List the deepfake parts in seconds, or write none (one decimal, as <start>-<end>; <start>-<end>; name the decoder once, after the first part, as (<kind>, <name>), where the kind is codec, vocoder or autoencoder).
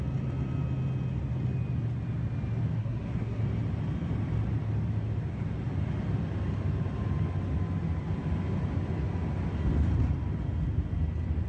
2.8-3.4 (codec, SNAC)